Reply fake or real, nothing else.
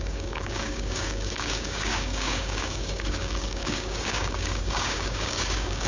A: fake